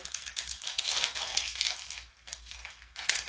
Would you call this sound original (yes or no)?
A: no